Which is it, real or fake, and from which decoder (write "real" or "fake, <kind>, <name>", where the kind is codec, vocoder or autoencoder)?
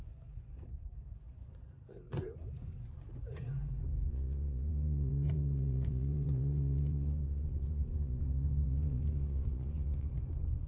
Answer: fake, vocoder, Vocos